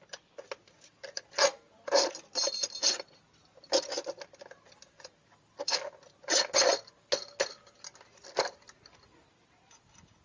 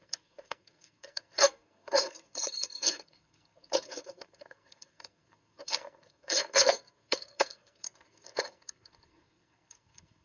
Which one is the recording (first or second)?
first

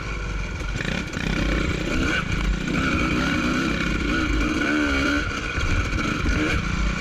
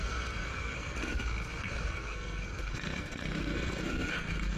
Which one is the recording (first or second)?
first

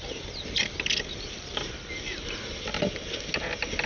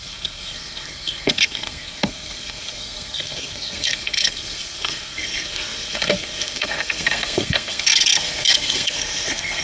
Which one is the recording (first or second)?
first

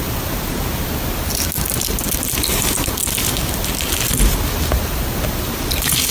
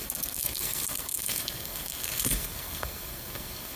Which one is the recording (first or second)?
first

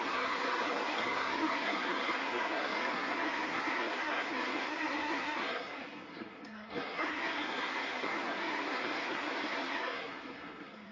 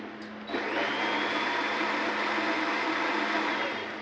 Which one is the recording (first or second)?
second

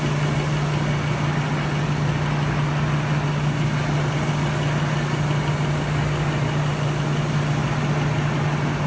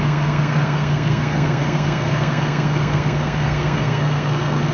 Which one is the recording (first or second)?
first